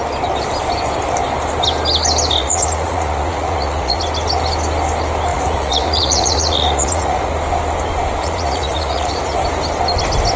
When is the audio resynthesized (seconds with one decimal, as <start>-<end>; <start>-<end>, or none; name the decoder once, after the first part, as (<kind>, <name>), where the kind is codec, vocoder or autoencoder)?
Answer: 2.4-4.0 (vocoder, Vocos); 5.3-7.3; 8.2-9.4